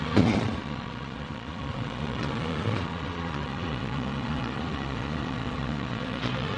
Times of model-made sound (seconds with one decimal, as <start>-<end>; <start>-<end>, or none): 0.0-6.6